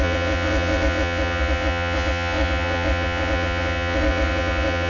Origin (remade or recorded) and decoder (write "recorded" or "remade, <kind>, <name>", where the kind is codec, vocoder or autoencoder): remade, vocoder, WaveNeXt